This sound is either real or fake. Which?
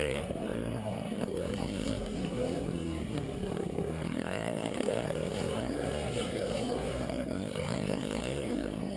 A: fake